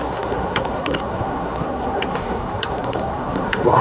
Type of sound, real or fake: fake